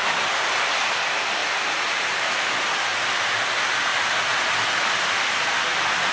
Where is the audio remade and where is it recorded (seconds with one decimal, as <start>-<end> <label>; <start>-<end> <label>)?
0.0-1.4 recorded; 1.4-2.4 remade; 2.4-6.1 recorded